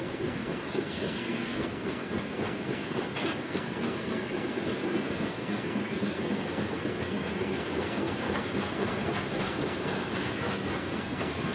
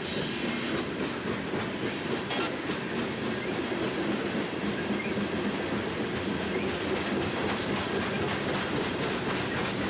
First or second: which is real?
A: second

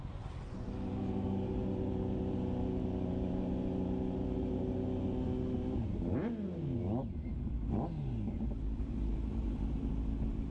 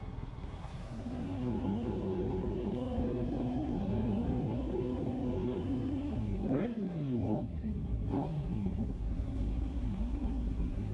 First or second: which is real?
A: first